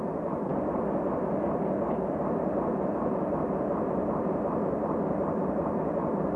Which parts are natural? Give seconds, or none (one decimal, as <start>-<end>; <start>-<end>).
0.0-6.4